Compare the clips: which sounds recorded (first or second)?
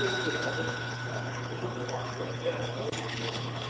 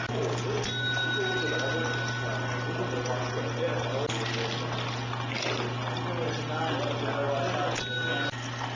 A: second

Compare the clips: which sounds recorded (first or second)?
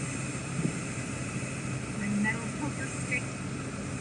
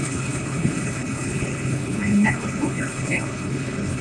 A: first